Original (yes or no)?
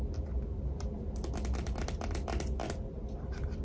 yes